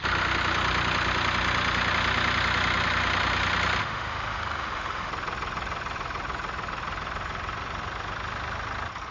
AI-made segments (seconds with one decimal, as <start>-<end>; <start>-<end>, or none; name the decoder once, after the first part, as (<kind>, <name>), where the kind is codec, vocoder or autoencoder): 3.8-5.1 (autoencoder, DAC-VAE)